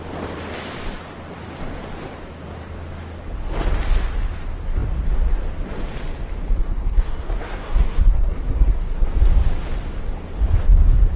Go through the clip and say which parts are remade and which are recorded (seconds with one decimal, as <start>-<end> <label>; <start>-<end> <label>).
0.0-6.6 recorded; 6.6-9.1 remade; 9.1-11.2 recorded